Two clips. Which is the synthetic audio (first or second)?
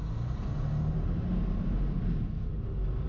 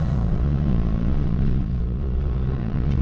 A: second